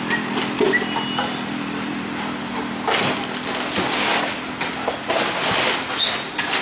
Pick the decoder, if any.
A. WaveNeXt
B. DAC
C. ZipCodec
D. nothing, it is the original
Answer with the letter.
D